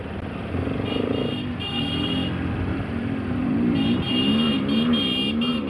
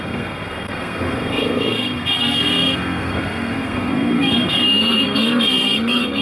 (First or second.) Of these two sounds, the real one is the first